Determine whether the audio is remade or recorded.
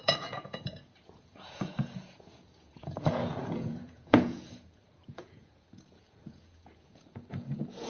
remade